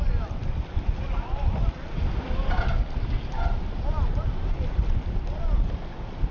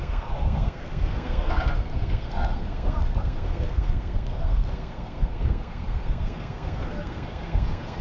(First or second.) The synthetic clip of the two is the second